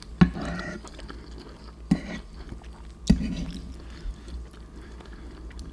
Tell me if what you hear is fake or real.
real